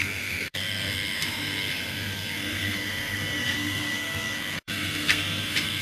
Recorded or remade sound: remade